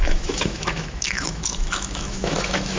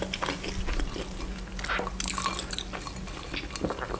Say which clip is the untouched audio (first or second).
second